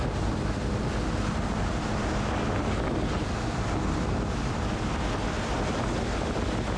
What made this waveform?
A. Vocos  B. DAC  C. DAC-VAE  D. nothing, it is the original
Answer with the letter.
D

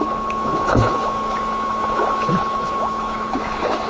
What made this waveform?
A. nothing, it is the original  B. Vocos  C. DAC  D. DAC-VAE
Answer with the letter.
D